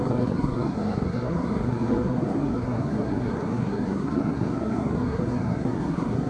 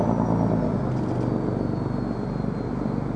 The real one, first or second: second